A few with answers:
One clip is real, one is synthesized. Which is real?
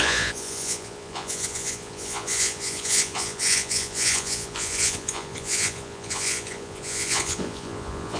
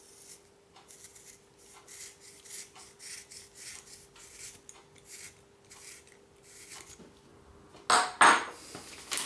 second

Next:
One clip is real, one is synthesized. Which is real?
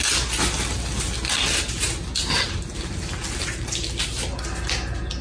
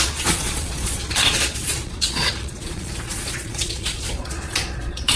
first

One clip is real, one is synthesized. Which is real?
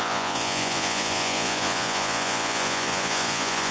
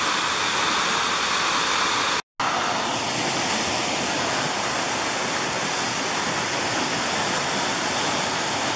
second